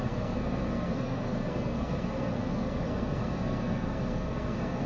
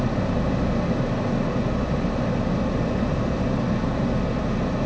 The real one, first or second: second